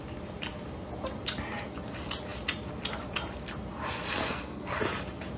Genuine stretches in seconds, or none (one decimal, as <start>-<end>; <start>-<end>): 0.0-4.2; 4.8-5.4